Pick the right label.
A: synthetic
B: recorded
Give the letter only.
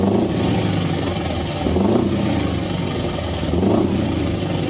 B